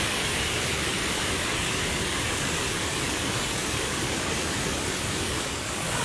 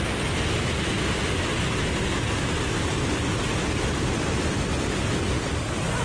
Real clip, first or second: second